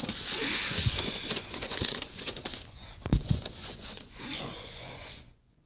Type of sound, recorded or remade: remade